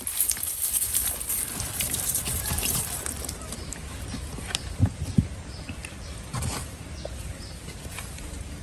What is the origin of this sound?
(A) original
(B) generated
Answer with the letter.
B